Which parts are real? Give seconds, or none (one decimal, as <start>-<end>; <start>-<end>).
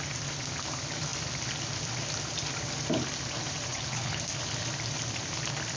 0.0-3.7; 4.2-5.8